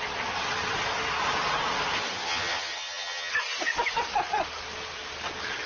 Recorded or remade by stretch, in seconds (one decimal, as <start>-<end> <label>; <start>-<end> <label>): 0.0-2.2 recorded; 2.2-3.3 remade; 3.3-5.7 recorded